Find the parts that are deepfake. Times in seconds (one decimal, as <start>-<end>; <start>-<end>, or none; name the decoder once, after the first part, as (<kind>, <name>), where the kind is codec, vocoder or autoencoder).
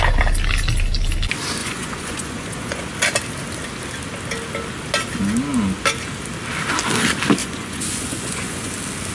1.6-2.9 (vocoder, Vocos); 7.4-8.7